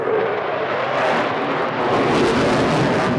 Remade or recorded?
recorded